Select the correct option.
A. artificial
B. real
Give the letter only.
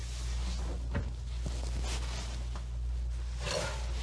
B